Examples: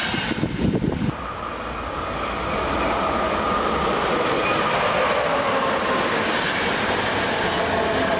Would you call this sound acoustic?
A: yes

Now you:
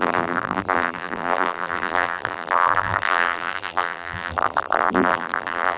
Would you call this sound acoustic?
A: no